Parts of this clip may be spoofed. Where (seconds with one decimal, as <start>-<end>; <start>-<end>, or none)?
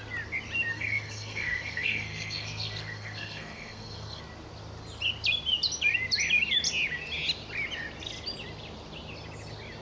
0.7-4.2